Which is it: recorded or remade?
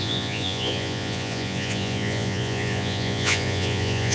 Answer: remade